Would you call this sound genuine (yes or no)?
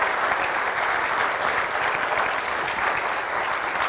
yes